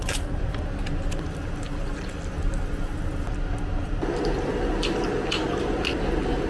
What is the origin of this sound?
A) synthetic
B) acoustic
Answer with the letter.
B